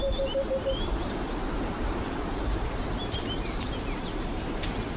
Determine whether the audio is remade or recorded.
remade